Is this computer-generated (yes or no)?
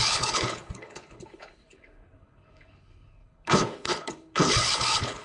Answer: yes